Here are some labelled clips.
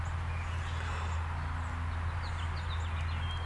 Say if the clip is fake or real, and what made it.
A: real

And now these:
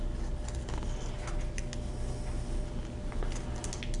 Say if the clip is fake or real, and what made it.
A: real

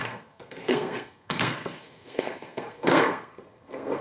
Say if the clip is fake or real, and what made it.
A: fake, codec, SNAC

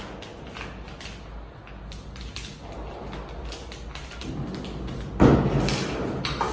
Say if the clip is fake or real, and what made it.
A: real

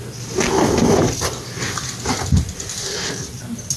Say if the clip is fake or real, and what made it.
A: real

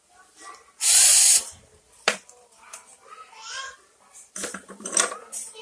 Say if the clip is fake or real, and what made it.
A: fake, vocoder, BigVGAN v2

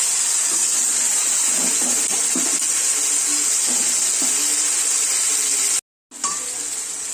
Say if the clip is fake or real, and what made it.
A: real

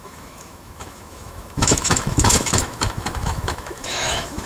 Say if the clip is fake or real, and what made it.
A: fake, autoencoder, DAC-VAE